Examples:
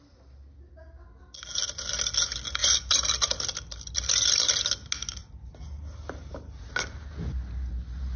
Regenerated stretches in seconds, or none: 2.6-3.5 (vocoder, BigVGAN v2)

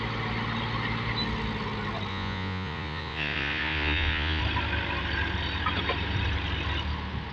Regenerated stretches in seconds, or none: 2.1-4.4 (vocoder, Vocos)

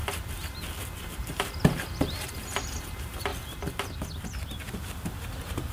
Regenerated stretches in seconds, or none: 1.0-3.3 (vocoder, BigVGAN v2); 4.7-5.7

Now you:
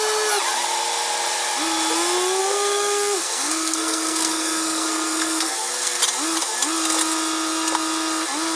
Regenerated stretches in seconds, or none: 2.4-6.0 (codec, SNAC)

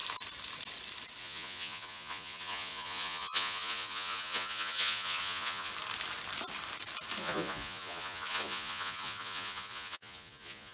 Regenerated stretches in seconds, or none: 1.2-5.7 (vocoder, Vocos); 7.2-10.7

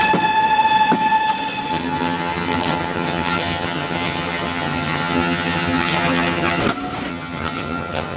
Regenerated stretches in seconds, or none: 1.7-6.6 (vocoder, HiFi-GAN); 7.1-8.2